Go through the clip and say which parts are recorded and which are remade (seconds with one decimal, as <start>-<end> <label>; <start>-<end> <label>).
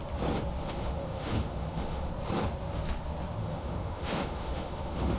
0.0-0.6 recorded; 0.6-2.1 remade; 2.1-3.4 recorded; 3.4-5.2 remade